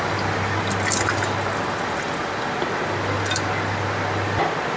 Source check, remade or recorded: recorded